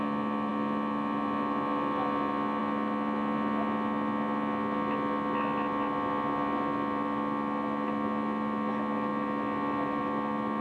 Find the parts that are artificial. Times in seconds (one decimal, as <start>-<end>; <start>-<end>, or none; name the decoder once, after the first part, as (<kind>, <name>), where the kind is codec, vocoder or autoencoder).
none